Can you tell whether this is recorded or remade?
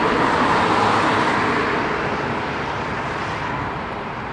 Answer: recorded